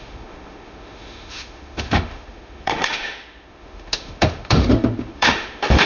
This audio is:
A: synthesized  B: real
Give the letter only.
A